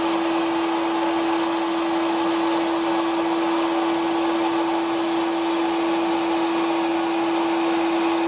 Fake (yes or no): no